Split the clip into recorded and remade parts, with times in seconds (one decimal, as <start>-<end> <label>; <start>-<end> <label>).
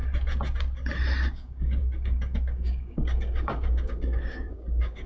0.0-1.3 recorded; 1.3-5.1 remade